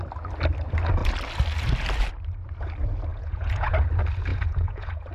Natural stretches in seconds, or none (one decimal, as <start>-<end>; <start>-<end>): 0.0-3.1; 3.7-4.3